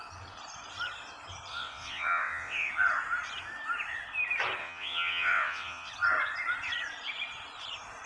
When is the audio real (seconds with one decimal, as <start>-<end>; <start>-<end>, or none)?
0.0-1.5; 2.7-4.6; 5.9-8.1